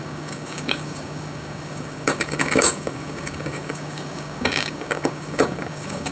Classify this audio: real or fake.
fake